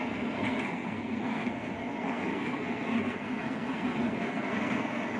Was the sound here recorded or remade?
remade